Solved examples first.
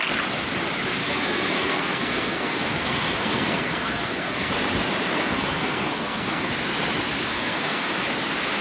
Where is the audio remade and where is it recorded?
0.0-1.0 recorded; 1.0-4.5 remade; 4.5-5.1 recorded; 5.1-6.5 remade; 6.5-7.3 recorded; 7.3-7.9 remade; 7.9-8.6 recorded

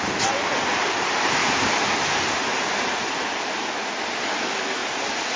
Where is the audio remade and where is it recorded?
0.0-5.4 recorded

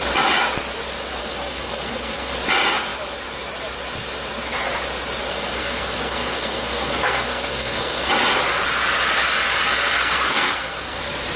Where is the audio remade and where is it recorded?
0.0-1.2 recorded; 1.2-2.3 remade; 2.3-5.3 recorded; 5.3-8.1 remade; 8.1-9.6 recorded; 9.6-11.0 remade; 11.0-11.4 recorded

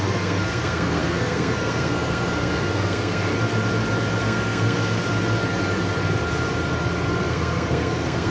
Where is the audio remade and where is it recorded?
0.0-3.3 remade; 3.3-4.2 recorded; 4.2-5.0 remade; 5.0-7.1 recorded; 7.1-8.3 remade

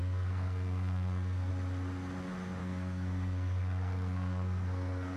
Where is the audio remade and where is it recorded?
0.0-1.5 remade; 1.5-2.6 recorded; 2.6-5.2 remade

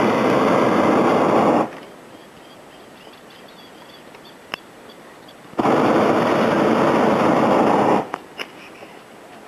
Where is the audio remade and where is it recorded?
0.0-9.5 recorded

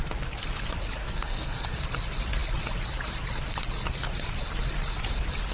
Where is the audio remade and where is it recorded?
0.0-1.0 recorded; 1.0-1.8 remade; 1.8-5.5 recorded

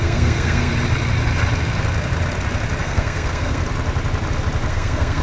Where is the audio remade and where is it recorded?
0.0-0.7 remade; 0.7-2.8 recorded; 2.8-3.6 remade; 3.6-4.7 recorded; 4.7-5.2 remade